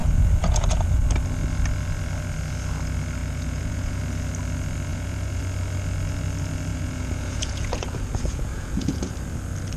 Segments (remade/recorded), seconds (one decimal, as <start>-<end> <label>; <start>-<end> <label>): 0.0-1.0 remade; 1.0-3.2 recorded; 3.2-4.0 remade; 4.0-4.9 recorded; 4.9-5.4 remade; 5.4-6.7 recorded; 6.7-9.1 remade; 9.1-9.8 recorded